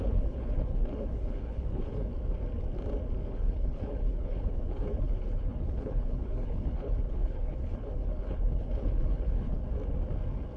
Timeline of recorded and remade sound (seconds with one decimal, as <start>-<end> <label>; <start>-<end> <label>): 0.0-2.1 remade; 2.1-3.3 recorded; 3.3-9.6 remade; 9.6-10.6 recorded